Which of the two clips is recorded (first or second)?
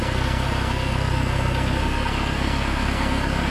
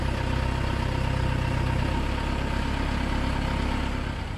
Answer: second